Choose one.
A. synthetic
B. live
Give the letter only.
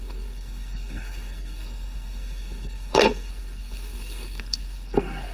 A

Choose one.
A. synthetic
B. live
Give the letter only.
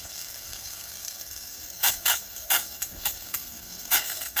A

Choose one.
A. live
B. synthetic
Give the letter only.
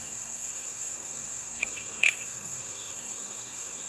B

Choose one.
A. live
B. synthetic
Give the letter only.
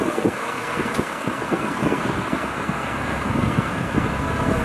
B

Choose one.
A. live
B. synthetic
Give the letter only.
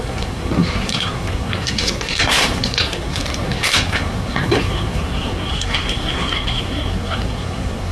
B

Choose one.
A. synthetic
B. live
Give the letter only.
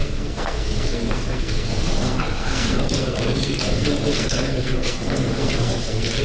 A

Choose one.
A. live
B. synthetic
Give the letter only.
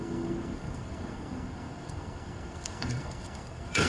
B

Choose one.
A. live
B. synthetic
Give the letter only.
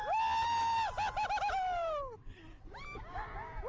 A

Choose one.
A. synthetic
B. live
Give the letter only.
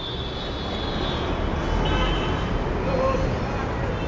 B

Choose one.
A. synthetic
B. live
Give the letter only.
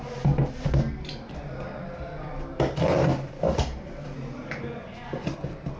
B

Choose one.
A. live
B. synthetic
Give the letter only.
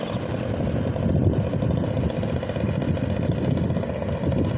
A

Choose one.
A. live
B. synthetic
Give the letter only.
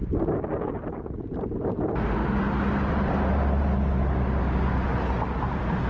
A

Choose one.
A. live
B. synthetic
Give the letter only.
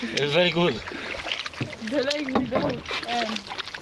A